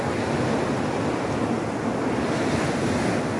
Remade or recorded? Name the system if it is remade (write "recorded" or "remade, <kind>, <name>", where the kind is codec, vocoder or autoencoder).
recorded